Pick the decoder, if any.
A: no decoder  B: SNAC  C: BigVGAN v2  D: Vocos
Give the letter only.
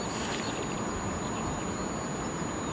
A